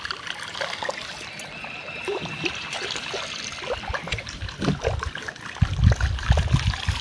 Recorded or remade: recorded